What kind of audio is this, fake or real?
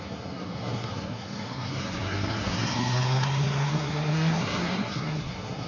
fake